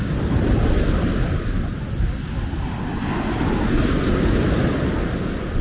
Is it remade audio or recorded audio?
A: recorded